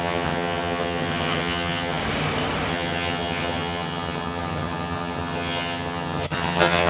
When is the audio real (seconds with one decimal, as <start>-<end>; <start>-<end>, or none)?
2.0-2.7